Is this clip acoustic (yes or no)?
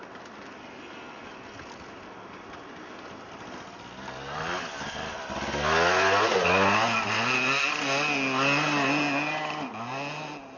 yes